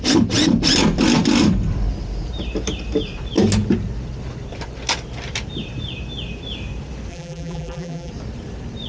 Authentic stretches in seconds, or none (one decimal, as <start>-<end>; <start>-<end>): 0.0-7.1; 8.1-8.9